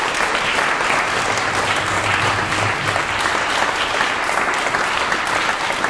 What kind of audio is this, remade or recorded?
recorded